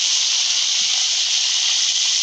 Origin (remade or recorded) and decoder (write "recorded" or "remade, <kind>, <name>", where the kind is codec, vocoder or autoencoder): remade, vocoder, BigVGAN v2